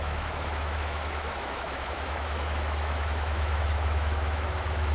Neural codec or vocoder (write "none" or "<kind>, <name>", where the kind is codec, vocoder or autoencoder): autoencoder, DAC-VAE